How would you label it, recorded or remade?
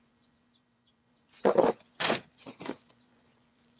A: remade